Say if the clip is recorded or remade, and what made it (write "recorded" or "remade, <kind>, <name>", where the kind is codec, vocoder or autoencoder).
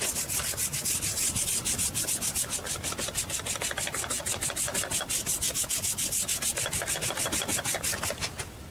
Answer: recorded